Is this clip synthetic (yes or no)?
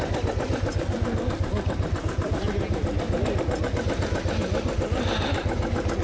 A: no